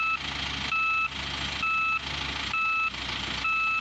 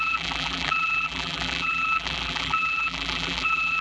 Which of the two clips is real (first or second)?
first